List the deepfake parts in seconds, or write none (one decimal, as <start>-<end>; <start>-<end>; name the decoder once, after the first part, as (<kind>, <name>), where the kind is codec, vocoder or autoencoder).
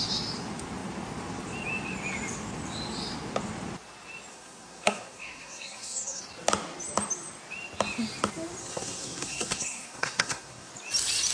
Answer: 4.3-6.2 (codec, SNAC); 8.6-10.7